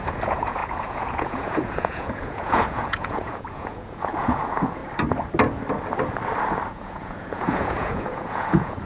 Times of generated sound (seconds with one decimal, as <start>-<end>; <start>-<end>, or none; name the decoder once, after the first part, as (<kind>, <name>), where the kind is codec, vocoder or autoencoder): 0.0-4.8 (vocoder, Vocos); 6.7-8.9